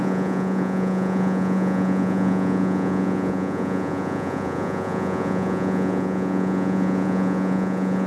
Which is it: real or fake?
fake